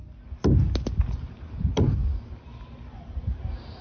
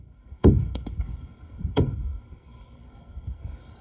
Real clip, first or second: first